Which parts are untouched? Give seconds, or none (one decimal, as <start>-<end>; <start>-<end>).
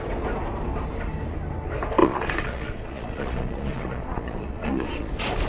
0.0-2.0; 5.1-5.5